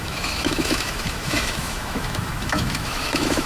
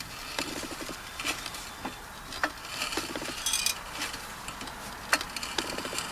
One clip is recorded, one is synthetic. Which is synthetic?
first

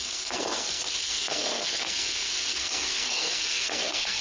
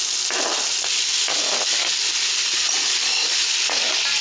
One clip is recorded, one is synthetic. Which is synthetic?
first